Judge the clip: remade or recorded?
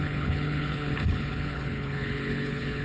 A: remade